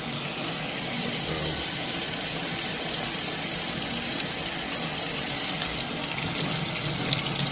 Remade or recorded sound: recorded